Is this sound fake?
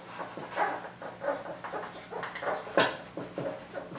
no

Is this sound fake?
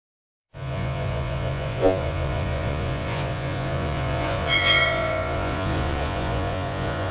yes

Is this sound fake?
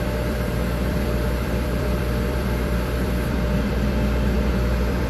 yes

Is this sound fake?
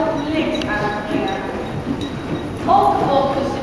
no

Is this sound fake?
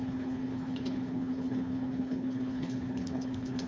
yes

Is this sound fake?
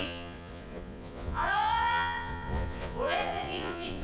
yes